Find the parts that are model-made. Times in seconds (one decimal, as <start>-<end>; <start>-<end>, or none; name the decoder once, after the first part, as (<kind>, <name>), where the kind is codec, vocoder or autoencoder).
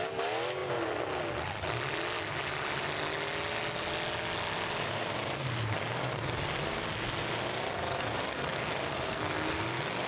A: 8.9-9.5 (codec, SNAC)